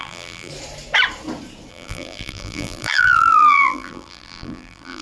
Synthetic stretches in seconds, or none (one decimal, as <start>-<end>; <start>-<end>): 0.0-0.5; 1.7-5.0